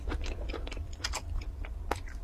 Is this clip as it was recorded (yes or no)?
no